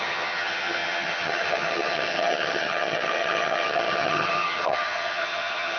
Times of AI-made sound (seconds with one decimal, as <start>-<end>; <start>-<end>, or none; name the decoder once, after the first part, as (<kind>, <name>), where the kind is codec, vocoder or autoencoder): 0.0-5.8 (vocoder, HiFi-GAN)